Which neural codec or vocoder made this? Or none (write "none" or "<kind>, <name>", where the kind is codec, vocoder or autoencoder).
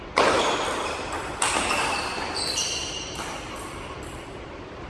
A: vocoder, BigVGAN v2